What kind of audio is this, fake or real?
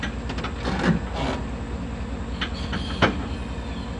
real